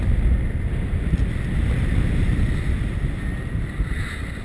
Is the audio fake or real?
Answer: real